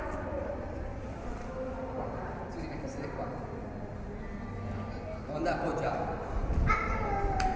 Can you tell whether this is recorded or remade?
recorded